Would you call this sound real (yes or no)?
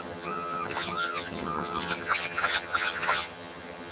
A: no